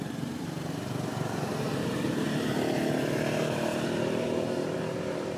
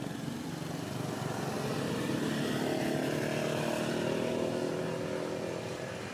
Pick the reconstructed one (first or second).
first